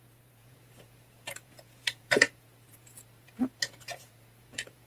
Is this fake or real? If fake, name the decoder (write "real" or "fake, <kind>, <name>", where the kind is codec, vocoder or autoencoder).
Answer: fake, vocoder, Vocos